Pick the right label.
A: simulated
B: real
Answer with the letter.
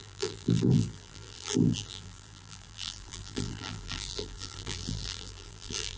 A